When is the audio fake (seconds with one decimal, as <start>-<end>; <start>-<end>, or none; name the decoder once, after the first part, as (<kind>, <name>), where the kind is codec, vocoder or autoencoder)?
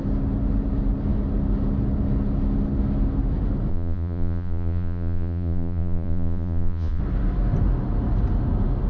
3.7-7.0 (vocoder, Vocos)